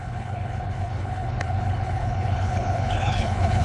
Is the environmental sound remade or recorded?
remade